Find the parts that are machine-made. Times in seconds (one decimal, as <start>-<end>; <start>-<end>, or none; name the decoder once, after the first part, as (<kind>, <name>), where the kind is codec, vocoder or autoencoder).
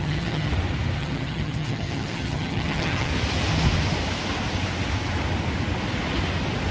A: 0.0-0.5 (vocoder, HiFi-GAN); 1.0-3.1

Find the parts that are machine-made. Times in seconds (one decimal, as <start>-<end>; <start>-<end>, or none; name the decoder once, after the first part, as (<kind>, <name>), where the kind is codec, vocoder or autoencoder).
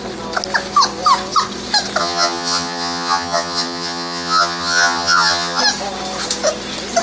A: 2.0-5.6 (vocoder, HiFi-GAN)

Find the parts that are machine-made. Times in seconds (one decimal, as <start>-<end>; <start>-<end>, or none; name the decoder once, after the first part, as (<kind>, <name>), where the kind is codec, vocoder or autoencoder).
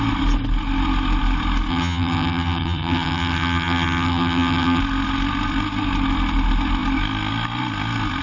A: 1.7-4.8 (vocoder, HiFi-GAN)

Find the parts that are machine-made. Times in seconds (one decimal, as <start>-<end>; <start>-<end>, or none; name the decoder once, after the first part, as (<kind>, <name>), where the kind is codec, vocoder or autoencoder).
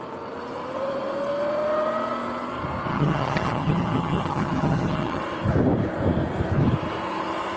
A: 2.9-5.2 (vocoder, HiFi-GAN)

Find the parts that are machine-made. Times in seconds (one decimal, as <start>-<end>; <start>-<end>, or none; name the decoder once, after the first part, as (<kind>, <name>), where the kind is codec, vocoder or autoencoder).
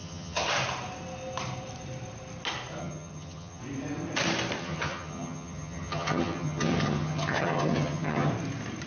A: 0.0-0.5 (vocoder, HiFi-GAN); 2.8-3.6; 4.6-8.3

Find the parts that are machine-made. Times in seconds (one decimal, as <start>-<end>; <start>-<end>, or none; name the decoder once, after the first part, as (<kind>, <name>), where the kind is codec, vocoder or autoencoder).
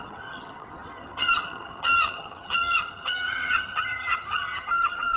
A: 0.0-5.2 (vocoder, HiFi-GAN)